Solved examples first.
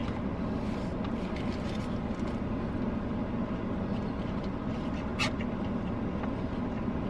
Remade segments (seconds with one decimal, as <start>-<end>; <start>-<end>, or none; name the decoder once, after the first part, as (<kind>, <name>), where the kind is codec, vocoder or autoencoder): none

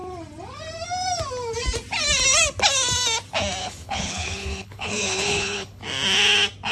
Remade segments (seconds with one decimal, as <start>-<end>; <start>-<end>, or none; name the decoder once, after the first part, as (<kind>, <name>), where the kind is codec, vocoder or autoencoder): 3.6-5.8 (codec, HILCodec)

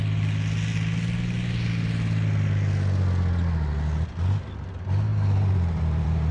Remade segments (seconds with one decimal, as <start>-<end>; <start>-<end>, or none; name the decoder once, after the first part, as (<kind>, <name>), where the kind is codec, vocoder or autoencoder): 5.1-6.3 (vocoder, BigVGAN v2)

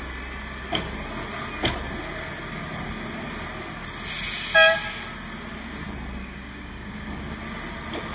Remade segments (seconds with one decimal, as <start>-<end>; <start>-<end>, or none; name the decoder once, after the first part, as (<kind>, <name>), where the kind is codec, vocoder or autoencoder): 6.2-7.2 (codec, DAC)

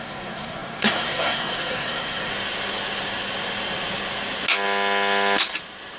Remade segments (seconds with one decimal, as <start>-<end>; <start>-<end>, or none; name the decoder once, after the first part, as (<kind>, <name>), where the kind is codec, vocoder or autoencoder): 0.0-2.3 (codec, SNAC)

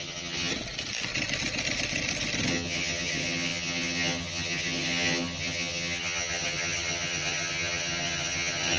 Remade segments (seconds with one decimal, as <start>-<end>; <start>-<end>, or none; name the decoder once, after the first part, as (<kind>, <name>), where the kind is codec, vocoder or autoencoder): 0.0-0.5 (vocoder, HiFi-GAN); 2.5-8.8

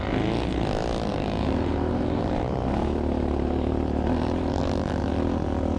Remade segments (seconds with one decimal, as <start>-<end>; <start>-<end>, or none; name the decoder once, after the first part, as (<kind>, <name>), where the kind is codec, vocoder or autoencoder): 1.1-4.6 (vocoder, BigVGAN v2)